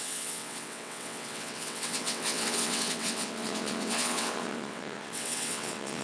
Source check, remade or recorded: remade